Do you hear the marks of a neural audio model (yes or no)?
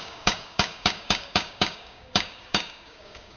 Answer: yes